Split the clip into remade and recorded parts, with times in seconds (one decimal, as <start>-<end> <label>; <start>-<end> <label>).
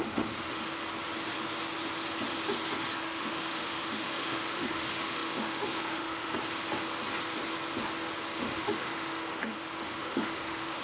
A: 0.0-0.8 remade; 0.8-3.0 recorded; 3.0-6.3 remade; 6.3-8.4 recorded; 8.4-10.8 remade